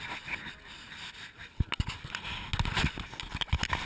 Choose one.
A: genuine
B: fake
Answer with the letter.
A